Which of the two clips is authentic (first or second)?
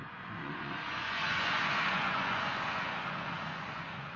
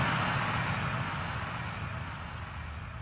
second